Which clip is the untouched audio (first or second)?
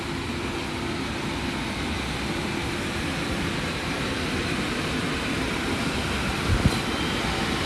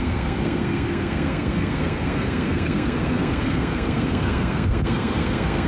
first